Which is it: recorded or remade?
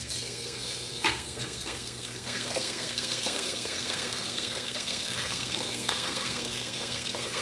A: remade